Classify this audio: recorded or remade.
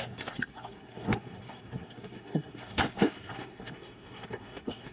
remade